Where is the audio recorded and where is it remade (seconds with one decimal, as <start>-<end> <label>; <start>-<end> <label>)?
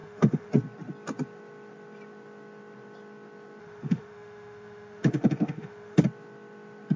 0.0-0.5 remade; 0.5-3.6 recorded; 3.6-6.0 remade; 6.0-7.0 recorded